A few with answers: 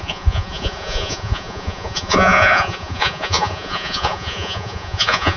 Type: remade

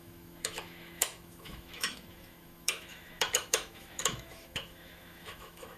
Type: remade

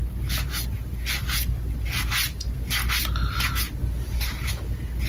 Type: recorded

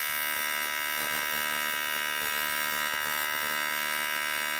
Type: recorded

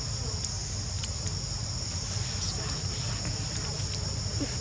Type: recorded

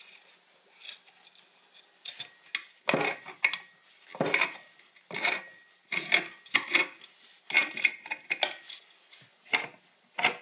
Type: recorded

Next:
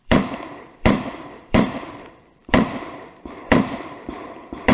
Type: remade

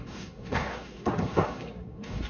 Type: remade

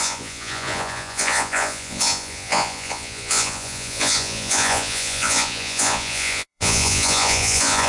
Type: remade